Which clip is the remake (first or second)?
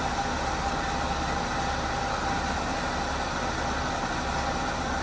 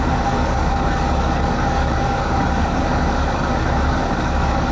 second